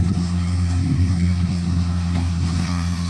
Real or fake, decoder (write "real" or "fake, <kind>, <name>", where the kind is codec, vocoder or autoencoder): fake, codec, SNAC